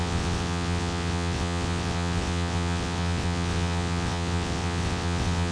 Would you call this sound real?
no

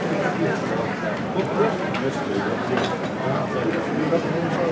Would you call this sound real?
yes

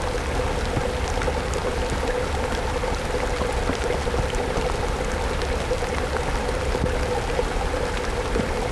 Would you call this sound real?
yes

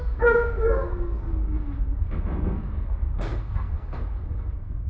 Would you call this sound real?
no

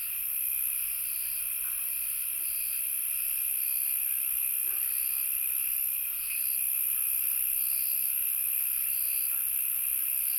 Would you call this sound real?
no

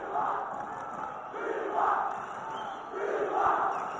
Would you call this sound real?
yes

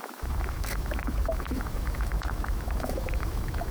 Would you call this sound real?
no